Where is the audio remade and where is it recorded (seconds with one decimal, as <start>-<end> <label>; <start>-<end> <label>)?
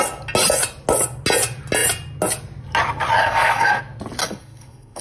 0.0-3.2 recorded; 3.2-3.8 remade; 3.8-4.2 recorded; 4.2-5.0 remade